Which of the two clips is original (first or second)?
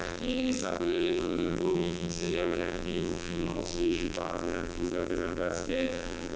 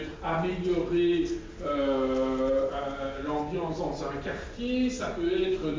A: second